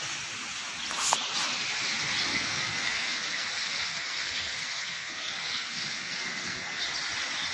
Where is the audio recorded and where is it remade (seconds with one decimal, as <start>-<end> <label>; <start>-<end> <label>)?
0.0-2.3 recorded; 2.3-6.8 remade; 6.8-7.5 recorded